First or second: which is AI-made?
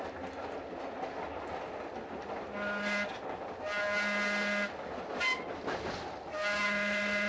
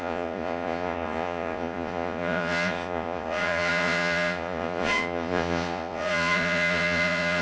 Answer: second